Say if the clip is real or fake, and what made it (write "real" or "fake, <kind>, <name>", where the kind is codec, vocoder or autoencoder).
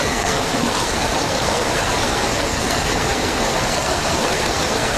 fake, codec, SNAC